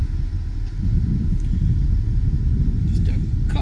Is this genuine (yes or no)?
yes